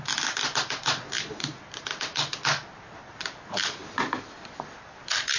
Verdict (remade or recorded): recorded